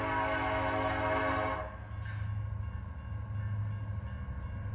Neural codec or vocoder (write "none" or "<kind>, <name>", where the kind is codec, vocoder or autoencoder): none